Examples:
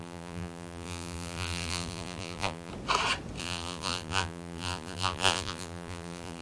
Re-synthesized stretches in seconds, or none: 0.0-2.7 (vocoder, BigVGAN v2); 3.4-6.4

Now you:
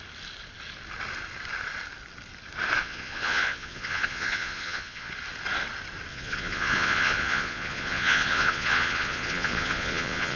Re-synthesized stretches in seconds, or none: 2.8-5.1 (vocoder, Vocos); 6.1-10.4

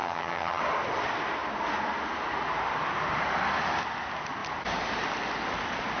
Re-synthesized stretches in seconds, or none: 0.0-0.6 (vocoder, HiFi-GAN)

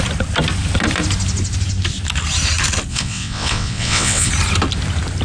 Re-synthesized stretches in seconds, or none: 2.9-4.3 (vocoder, WaveNeXt)